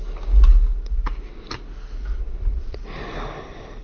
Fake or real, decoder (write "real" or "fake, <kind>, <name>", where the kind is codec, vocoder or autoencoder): real